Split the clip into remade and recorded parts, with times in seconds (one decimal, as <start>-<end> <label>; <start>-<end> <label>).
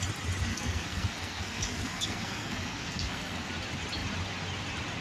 0.0-0.5 recorded; 0.5-3.5 remade; 3.5-5.0 recorded